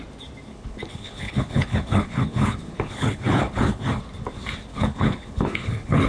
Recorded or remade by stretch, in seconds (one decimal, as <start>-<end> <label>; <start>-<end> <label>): 0.0-0.5 recorded; 0.5-4.0 remade; 4.0-4.7 recorded; 4.7-6.1 remade

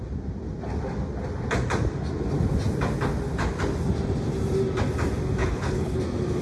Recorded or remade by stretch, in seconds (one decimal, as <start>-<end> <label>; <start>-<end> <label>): 0.0-5.4 recorded; 5.4-6.0 remade; 6.0-6.4 recorded

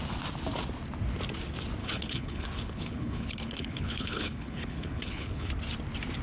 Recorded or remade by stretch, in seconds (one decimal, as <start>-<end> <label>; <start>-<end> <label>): 0.0-1.8 recorded; 1.8-5.5 remade; 5.5-6.2 recorded

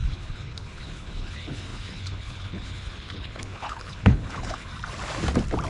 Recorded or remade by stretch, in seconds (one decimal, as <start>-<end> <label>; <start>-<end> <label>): 0.0-4.7 remade; 4.7-5.7 recorded